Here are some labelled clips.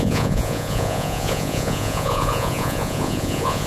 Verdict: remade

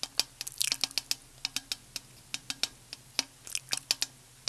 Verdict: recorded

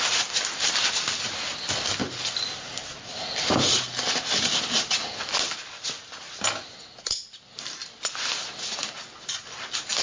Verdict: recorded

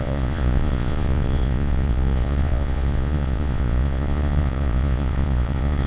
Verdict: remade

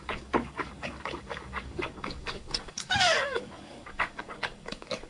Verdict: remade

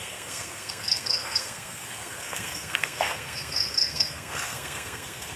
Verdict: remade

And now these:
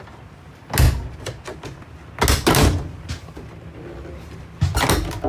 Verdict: recorded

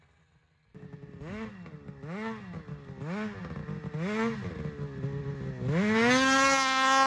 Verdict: recorded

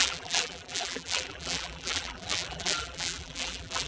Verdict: remade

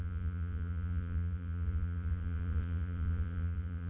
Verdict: remade